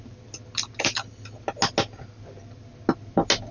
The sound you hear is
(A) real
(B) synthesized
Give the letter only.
A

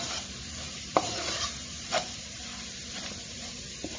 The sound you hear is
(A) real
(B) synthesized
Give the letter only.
B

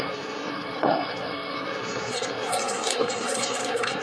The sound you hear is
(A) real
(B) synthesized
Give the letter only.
B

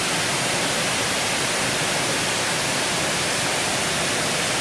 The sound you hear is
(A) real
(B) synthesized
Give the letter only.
A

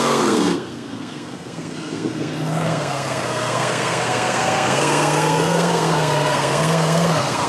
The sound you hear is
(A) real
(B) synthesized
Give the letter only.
B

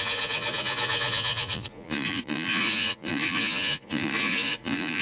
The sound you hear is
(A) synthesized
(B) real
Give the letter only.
A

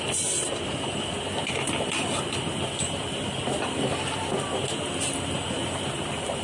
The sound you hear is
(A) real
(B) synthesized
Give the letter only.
A